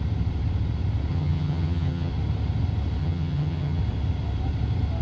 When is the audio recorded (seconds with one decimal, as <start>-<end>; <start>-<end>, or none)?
0.0-1.1; 2.1-3.0; 3.8-5.0